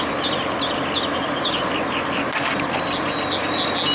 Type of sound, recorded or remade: recorded